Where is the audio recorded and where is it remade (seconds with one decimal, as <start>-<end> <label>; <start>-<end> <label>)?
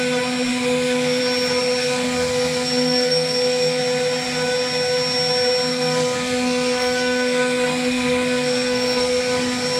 0.0-0.5 recorded; 0.5-1.2 remade; 1.2-1.8 recorded; 1.8-3.8 remade; 3.8-5.7 recorded; 5.7-9.2 remade; 9.2-9.8 recorded